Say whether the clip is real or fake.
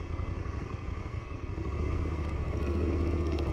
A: fake